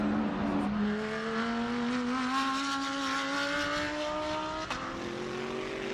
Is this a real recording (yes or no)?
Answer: yes